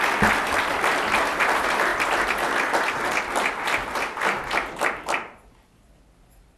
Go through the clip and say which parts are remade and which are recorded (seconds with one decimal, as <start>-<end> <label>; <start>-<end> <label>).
0.0-6.6 recorded